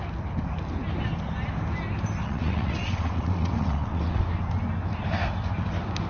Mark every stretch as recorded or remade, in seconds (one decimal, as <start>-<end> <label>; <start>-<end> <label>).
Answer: 0.0-2.2 recorded; 2.2-4.2 remade; 4.2-6.1 recorded